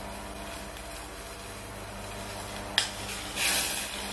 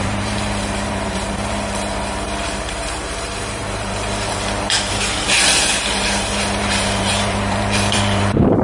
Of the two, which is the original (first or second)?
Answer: first